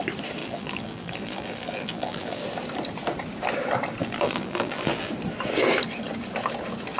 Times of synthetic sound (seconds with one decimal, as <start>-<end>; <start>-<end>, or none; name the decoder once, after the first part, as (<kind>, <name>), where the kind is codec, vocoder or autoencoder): 0.4-2.4 (vocoder, BigVGAN v2); 4.0-5.1